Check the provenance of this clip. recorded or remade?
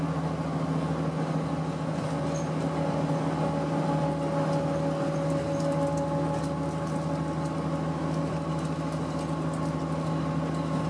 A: recorded